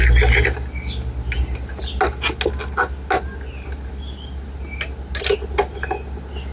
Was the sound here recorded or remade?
recorded